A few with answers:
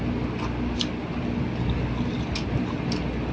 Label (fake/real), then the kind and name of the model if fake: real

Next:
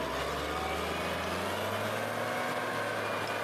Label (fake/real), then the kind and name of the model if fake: real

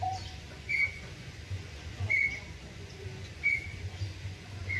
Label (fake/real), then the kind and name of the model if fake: fake, vocoder, Vocos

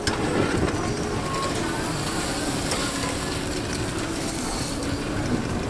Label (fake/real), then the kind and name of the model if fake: real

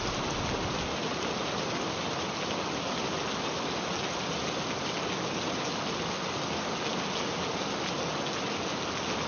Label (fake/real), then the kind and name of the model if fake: real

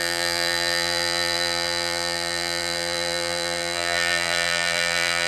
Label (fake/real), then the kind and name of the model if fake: fake, vocoder, BigVGAN v2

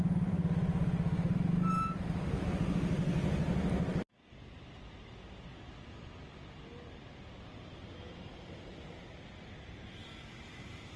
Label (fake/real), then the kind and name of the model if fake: real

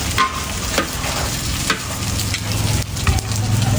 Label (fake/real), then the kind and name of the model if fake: real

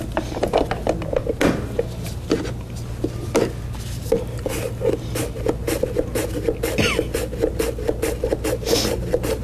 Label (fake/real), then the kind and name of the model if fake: real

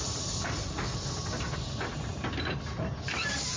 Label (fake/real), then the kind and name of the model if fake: real